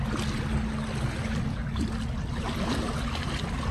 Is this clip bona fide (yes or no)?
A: yes